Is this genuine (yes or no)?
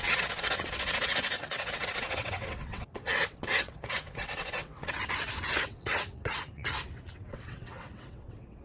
no